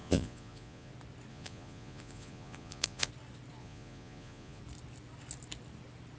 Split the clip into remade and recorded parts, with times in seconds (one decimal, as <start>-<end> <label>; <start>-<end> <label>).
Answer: 0.0-0.9 remade; 0.9-1.3 recorded; 1.3-3.1 remade; 3.1-3.6 recorded; 3.6-4.6 remade; 4.6-6.2 recorded